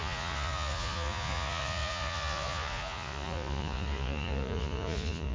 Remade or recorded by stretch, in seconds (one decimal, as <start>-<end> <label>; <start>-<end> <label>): 0.0-5.3 remade